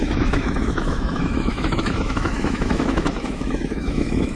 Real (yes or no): no